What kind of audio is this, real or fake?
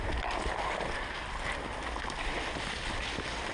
real